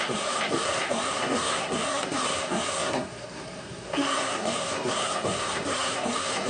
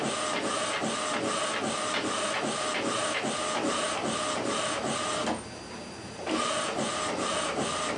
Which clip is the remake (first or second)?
first